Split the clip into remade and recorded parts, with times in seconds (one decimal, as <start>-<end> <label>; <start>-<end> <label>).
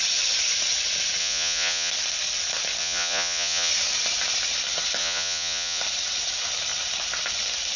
0.0-1.2 recorded; 1.2-1.9 remade; 1.9-2.8 recorded; 2.8-3.7 remade; 3.7-5.0 recorded; 5.0-5.8 remade; 5.8-7.8 recorded